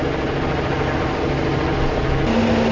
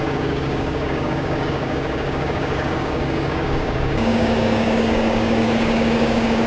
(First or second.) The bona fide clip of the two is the first